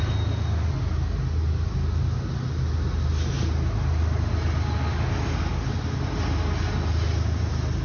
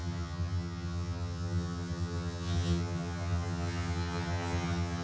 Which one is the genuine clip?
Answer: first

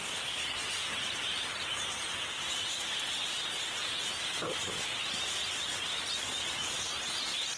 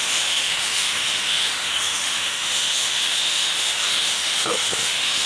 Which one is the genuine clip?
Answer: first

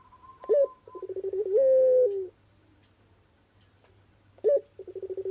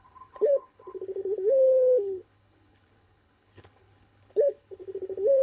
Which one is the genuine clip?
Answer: first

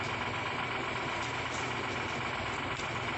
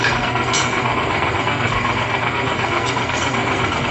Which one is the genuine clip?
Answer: first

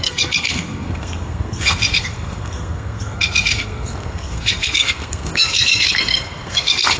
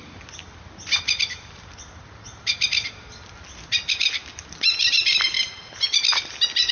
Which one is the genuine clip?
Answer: second